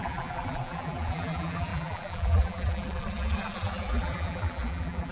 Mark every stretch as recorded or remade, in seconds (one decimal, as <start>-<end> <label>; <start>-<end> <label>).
0.0-5.1 remade